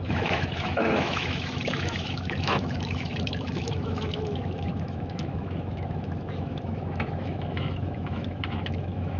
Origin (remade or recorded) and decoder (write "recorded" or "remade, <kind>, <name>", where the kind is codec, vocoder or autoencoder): remade, autoencoder, DAC-VAE